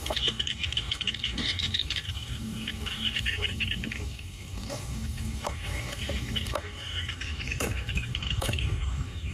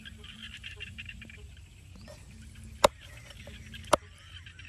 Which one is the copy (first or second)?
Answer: first